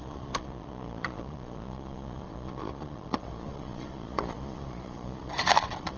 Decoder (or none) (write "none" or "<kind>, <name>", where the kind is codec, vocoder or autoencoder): vocoder, Vocos